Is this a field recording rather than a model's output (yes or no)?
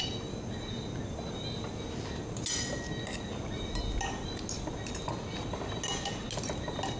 yes